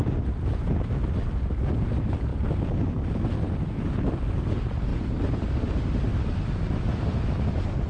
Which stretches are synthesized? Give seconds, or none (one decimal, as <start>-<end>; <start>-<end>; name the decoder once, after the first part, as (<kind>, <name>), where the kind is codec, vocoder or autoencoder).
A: none